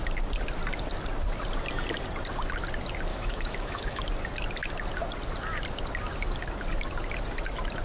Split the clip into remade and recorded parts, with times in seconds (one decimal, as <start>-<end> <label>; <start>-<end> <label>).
0.0-3.1 recorded; 3.1-4.0 remade; 4.0-7.8 recorded